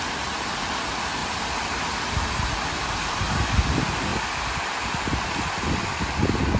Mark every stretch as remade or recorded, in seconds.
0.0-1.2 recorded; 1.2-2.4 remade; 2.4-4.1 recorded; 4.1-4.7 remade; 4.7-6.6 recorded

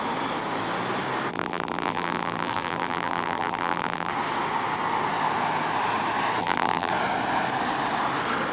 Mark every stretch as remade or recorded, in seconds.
0.0-1.3 recorded; 1.3-4.1 remade; 4.1-6.4 recorded; 6.4-6.9 remade; 6.9-8.5 recorded

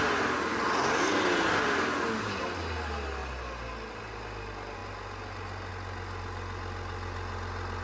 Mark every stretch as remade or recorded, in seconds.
0.0-0.5 recorded; 0.5-1.0 remade; 1.0-3.2 recorded; 3.2-4.0 remade; 4.0-7.8 recorded

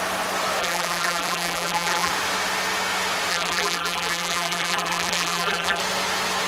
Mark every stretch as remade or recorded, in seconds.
0.0-0.6 recorded; 0.6-2.1 remade; 2.1-3.3 recorded; 3.3-5.8 remade; 5.8-6.5 recorded